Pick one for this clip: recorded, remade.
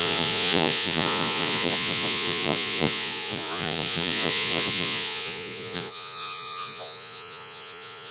remade